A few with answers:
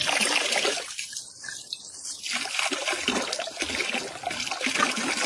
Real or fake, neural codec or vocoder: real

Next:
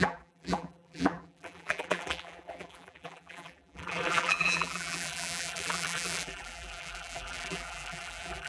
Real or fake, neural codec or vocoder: fake, vocoder, BigVGAN v2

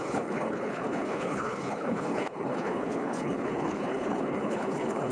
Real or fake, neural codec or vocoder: fake, codec, HILCodec